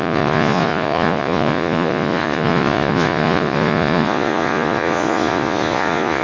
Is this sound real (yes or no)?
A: no